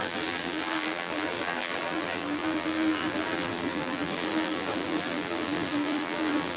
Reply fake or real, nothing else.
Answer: fake